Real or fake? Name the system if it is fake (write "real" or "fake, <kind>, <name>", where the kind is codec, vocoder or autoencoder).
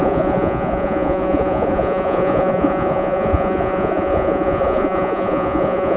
fake, vocoder, Vocos